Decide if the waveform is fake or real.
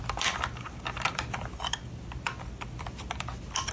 real